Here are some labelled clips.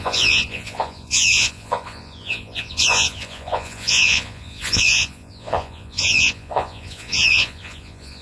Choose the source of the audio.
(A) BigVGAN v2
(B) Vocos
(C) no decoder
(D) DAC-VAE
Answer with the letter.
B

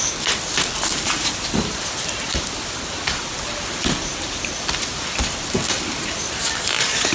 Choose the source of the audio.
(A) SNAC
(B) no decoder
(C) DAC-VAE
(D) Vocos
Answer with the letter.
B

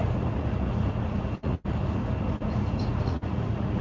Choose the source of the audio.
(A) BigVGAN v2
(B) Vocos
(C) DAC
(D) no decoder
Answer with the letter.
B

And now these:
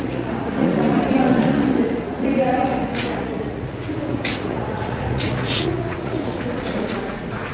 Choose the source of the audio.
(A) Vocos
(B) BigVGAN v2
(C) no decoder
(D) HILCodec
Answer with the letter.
A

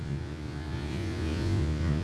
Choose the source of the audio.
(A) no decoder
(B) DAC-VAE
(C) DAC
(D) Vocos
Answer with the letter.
D